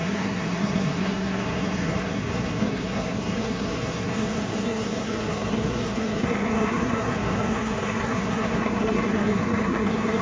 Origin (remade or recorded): remade